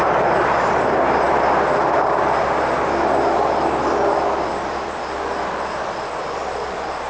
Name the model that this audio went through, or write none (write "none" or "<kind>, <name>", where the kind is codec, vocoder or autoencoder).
none